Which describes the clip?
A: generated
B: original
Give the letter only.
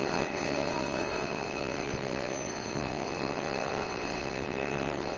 A